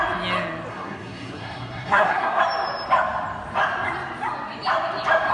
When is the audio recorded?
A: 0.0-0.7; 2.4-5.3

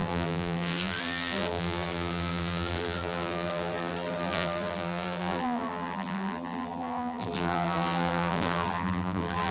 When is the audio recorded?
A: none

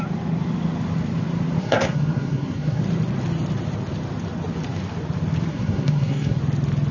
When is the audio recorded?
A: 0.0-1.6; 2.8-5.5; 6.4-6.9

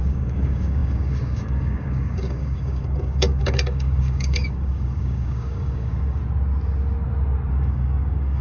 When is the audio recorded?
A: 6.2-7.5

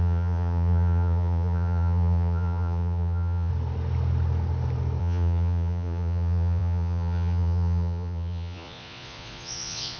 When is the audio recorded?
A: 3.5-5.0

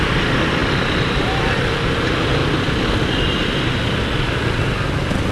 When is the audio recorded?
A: 0.0-5.3